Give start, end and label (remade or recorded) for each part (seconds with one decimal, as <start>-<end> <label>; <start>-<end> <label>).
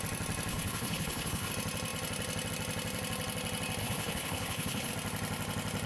0.0-0.5 recorded; 0.5-1.5 remade; 1.5-3.8 recorded; 3.8-4.9 remade; 4.9-5.9 recorded